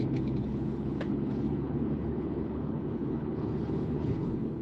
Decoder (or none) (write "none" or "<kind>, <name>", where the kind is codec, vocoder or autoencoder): codec, HILCodec